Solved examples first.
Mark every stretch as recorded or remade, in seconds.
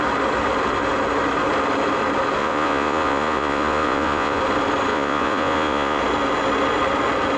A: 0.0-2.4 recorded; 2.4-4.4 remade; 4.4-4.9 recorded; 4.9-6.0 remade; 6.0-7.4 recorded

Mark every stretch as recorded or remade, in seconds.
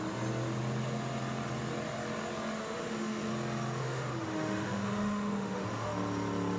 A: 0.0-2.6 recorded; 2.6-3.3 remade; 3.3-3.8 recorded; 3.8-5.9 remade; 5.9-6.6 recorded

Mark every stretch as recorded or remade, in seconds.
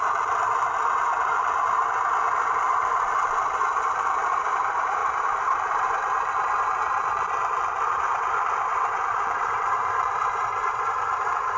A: 0.0-5.0 recorded; 5.0-5.7 remade; 5.7-8.7 recorded; 8.7-10.2 remade; 10.2-11.6 recorded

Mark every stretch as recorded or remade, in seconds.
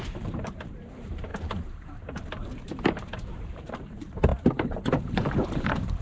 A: 0.0-6.0 remade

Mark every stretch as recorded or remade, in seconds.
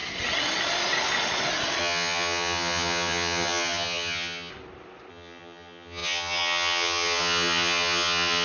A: 0.0-1.8 recorded; 1.8-4.5 remade; 4.5-5.1 recorded; 5.1-8.4 remade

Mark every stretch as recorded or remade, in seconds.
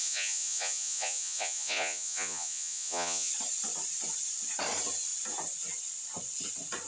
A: 0.0-3.3 remade; 3.3-6.9 recorded